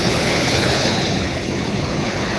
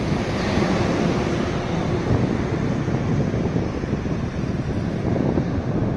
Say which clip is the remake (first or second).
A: first